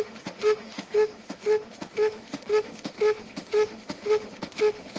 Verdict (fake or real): fake